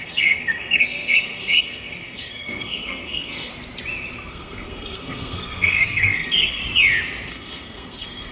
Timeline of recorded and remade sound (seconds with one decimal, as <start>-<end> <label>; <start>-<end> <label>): 0.0-3.5 remade; 3.5-4.3 recorded; 4.3-6.6 remade; 6.6-7.3 recorded; 7.3-8.3 remade